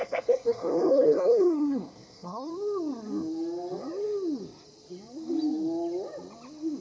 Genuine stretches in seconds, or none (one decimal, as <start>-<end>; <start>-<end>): 2.5-6.8